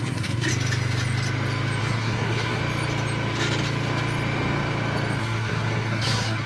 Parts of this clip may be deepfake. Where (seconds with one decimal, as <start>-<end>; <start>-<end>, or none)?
0.0-0.5; 1.8-2.6; 5.2-6.5